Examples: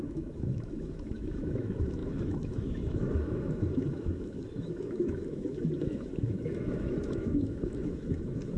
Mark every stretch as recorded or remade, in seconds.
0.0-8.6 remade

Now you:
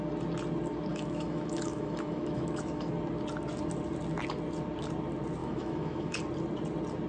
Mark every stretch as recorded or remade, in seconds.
0.0-0.9 recorded; 0.9-2.9 remade; 2.9-5.4 recorded; 5.4-6.2 remade; 6.2-7.1 recorded